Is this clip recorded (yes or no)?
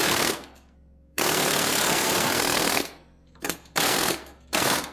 no